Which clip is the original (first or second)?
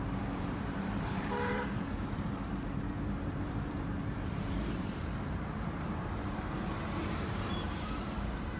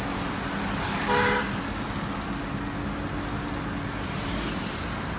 second